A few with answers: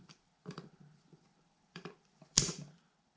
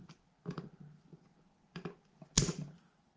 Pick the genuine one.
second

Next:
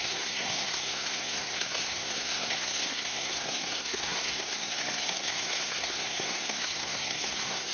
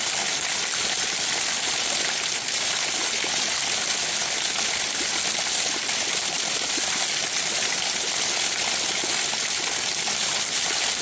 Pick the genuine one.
second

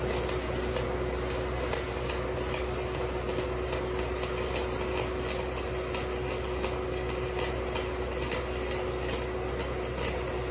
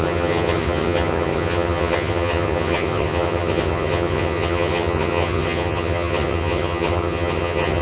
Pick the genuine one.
first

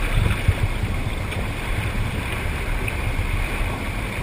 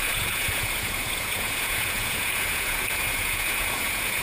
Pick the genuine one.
first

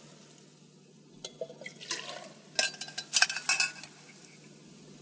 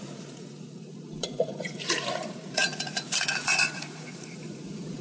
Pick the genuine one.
first